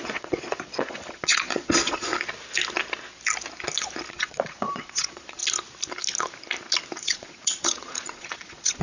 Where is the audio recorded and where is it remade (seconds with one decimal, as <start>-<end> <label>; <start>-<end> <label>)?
0.0-2.1 remade; 2.1-4.1 recorded; 4.1-5.4 remade; 5.4-7.0 recorded; 7.0-8.8 remade